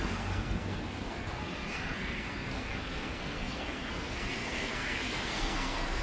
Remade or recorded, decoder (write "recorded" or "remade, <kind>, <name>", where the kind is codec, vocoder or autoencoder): remade, codec, SNAC